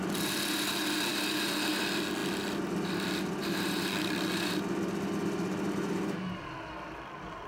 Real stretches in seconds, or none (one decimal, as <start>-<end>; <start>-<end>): 0.0-7.5